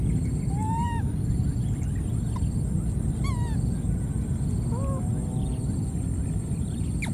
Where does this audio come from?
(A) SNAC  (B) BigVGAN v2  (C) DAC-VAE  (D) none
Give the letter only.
D